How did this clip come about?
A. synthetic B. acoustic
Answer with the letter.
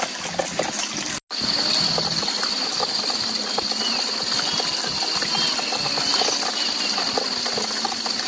B